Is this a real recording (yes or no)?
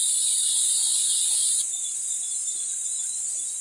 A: yes